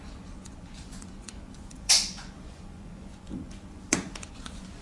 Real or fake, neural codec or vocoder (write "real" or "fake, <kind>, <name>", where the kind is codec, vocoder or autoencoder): fake, vocoder, Vocos